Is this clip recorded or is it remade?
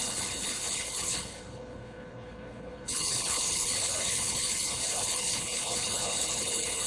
remade